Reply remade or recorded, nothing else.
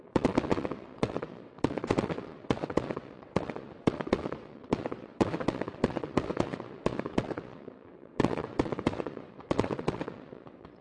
remade